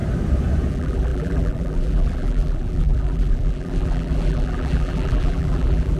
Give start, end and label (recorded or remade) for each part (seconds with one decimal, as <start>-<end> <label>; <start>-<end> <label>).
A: 0.0-0.7 recorded; 0.7-6.0 remade